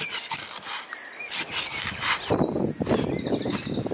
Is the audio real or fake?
real